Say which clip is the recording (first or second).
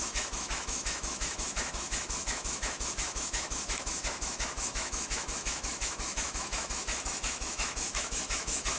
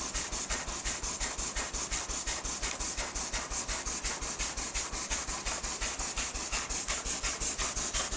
second